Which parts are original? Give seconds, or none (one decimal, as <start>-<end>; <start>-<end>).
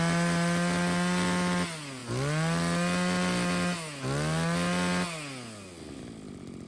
0.0-6.7